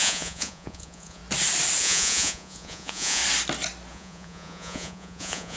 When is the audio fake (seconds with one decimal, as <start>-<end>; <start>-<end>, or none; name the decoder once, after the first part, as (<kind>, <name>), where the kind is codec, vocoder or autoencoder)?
0.0-1.2 (vocoder, Vocos); 1.8-3.2; 3.9-5.6